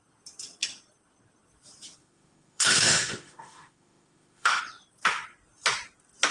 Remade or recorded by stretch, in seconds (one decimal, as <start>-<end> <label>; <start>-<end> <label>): 0.0-2.0 recorded; 2.0-4.6 remade; 4.6-6.3 recorded